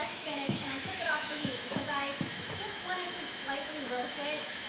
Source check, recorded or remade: remade